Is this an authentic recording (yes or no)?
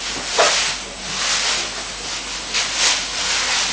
yes